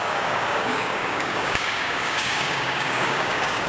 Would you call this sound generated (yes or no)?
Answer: yes